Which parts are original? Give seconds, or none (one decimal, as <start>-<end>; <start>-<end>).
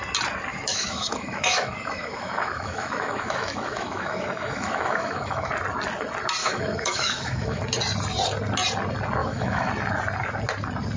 0.0-0.5; 5.5-6.4; 7.6-9.2; 9.7-11.0